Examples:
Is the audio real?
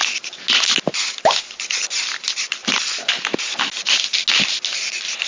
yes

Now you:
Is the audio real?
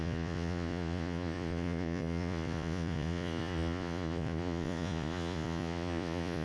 no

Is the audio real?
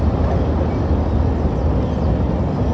yes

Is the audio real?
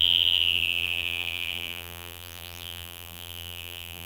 no